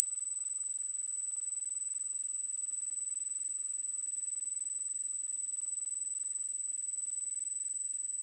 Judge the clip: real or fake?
fake